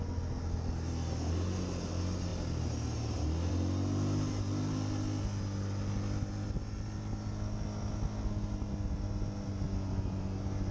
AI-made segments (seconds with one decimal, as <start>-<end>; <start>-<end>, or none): none